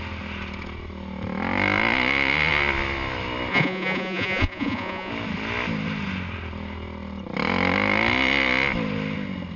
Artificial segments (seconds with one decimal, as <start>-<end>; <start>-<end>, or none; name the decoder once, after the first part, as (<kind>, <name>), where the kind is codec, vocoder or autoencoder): 3.5-5.1 (vocoder, Vocos)

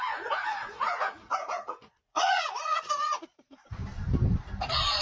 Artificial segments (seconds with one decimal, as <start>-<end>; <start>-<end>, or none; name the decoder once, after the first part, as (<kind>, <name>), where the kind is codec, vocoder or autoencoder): 0.0-3.8 (vocoder, Vocos)

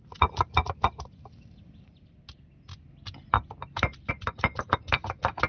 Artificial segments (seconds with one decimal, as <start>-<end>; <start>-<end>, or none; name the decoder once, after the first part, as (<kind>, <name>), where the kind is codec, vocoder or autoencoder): none

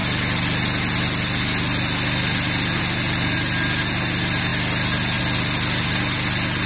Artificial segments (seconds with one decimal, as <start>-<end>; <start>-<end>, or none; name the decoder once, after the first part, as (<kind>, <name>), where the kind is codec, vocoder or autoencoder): none

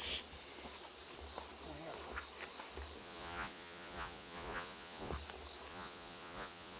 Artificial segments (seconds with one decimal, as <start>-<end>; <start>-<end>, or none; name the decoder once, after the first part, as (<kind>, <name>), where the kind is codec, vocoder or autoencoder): 3.0-5.1 (vocoder, Vocos); 5.7-6.8

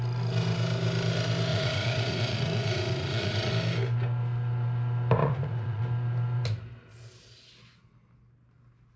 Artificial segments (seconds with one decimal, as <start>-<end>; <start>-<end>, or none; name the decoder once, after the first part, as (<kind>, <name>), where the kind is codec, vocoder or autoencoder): 1.5-3.5 (vocoder, Vocos); 5.2-5.8

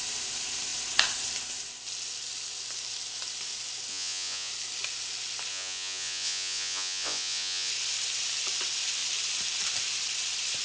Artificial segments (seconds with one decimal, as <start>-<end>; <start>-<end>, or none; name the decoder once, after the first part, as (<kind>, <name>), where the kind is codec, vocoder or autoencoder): 3.9-4.5 (vocoder, Vocos); 5.5-7.7

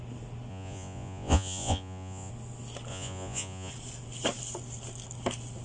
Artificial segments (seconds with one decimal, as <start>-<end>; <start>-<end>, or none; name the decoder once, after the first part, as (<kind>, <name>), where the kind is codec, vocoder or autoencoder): 0.5-2.3 (vocoder, Vocos); 2.9-3.7